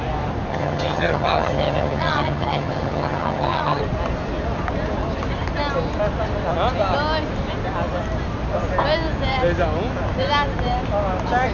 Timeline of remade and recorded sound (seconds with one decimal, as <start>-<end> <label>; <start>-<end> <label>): 0.0-0.5 recorded; 0.5-3.8 remade; 3.8-11.5 recorded